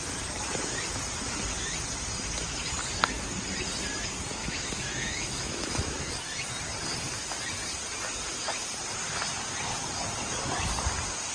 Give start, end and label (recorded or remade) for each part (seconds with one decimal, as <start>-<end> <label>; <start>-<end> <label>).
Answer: 0.0-4.4 recorded; 4.4-6.1 remade; 6.1-11.3 recorded